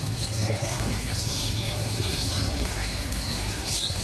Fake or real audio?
fake